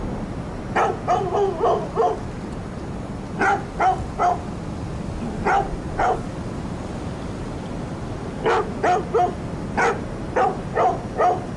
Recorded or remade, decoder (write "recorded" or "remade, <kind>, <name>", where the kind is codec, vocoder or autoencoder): recorded